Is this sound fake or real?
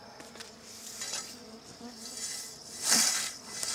real